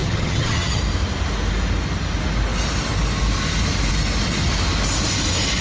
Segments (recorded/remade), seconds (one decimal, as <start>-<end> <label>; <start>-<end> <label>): 0.0-0.8 remade; 0.8-5.6 recorded